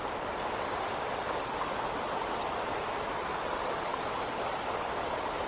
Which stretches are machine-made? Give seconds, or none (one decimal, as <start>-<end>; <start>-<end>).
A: none